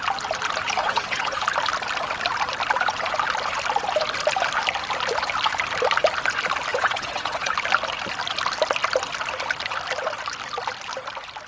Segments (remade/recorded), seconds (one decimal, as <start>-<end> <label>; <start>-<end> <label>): 0.0-0.8 recorded; 0.8-1.4 remade; 1.4-6.7 recorded; 6.7-7.5 remade; 7.5-11.5 recorded